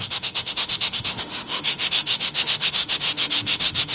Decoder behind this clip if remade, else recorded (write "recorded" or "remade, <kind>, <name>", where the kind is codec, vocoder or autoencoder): remade, autoencoder, DAC-VAE